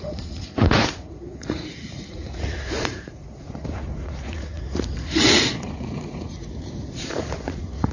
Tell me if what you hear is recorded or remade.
remade